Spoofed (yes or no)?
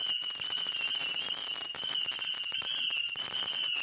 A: no